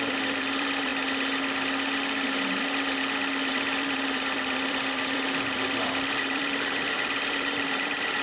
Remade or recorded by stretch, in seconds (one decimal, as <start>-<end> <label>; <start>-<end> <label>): 0.0-0.9 remade; 0.9-3.5 recorded; 3.5-8.2 remade